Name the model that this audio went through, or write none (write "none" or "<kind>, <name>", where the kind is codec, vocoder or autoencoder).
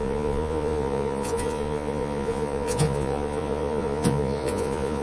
vocoder, Vocos